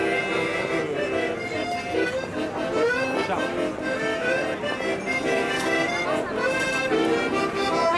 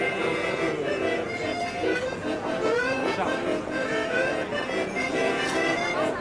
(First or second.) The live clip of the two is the first